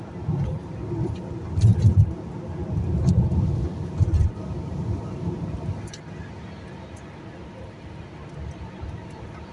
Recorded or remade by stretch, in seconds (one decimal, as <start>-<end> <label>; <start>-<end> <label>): 0.0-1.7 recorded; 1.7-2.2 remade; 2.2-9.5 recorded